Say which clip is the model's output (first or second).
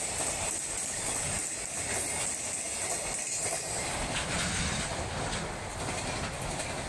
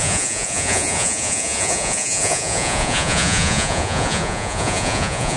second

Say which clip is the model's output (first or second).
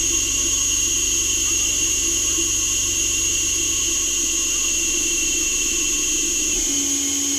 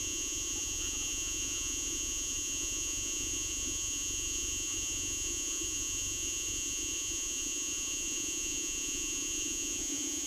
second